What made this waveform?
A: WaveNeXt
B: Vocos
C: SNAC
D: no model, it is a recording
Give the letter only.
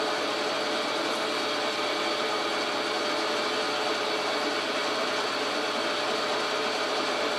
D